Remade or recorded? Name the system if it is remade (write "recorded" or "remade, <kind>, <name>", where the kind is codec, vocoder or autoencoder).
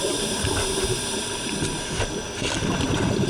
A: remade, vocoder, BigVGAN v2